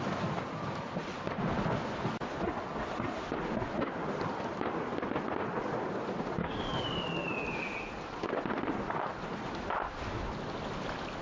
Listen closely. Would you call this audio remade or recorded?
recorded